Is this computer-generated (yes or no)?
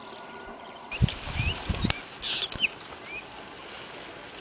no